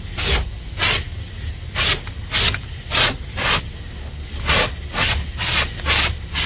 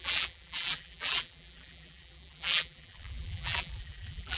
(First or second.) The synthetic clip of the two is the second